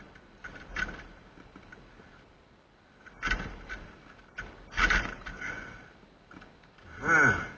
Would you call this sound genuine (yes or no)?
yes